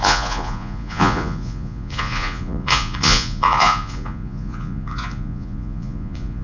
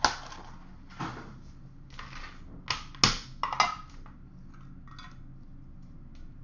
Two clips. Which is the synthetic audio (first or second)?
first